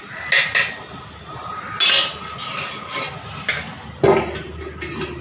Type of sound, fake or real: real